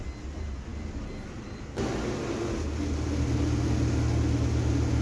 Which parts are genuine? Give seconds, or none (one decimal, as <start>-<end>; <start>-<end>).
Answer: 0.0-5.0